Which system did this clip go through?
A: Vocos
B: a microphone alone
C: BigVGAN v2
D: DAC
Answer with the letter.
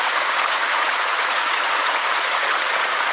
A